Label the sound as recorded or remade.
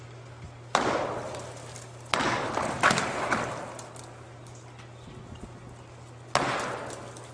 recorded